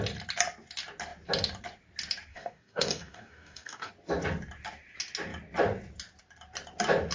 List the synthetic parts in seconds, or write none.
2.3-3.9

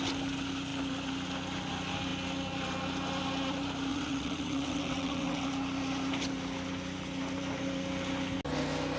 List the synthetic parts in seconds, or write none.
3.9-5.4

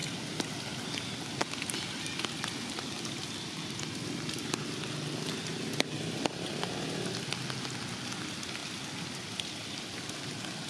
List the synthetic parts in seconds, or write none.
none

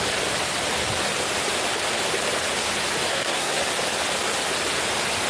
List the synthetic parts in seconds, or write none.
3.1-3.6

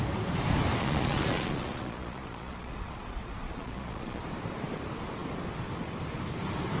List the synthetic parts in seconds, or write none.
0.8-4.2

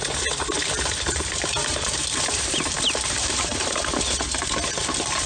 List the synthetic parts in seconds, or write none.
0.6-3.8